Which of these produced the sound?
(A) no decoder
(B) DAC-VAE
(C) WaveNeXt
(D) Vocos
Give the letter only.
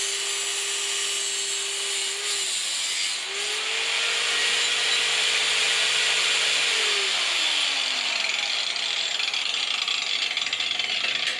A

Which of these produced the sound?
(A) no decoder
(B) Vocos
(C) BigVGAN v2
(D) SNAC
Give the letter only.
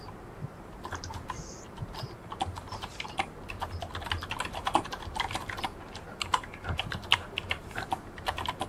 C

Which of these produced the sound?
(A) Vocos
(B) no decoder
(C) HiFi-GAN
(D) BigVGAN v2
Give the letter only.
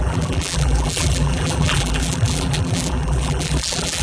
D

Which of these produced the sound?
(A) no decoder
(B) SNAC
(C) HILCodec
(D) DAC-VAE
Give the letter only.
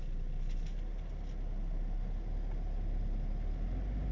A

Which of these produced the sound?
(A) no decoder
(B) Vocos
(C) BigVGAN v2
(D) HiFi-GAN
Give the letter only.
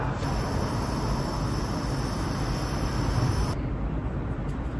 A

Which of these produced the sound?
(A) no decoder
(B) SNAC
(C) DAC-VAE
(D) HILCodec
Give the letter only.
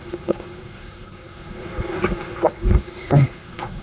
B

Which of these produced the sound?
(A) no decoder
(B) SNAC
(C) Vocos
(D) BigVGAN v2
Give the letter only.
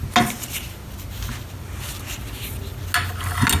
A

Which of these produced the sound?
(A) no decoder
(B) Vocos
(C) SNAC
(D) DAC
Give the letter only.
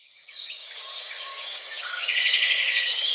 D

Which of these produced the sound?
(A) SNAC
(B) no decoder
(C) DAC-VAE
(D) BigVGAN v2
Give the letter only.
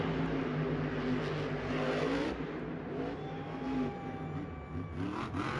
B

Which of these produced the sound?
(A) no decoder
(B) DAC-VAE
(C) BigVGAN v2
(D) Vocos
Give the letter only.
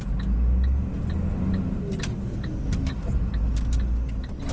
A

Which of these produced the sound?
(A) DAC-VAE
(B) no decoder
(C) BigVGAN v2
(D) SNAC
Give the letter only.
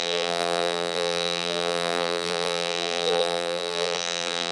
C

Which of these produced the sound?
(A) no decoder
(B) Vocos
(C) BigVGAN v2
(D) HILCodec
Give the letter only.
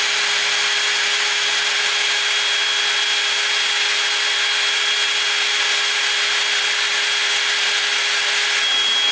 A